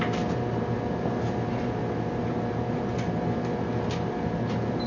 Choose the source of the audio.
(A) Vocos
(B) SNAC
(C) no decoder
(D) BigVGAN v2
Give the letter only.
C